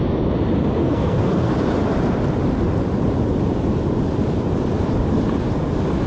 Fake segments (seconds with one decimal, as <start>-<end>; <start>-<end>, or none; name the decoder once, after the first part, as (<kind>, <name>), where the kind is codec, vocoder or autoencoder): 0.8-1.5 (codec, SNAC)